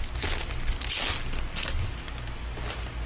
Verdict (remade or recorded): recorded